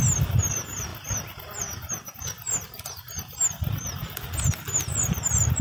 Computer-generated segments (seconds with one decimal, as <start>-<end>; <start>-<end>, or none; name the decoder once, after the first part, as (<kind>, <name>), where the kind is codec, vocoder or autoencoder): none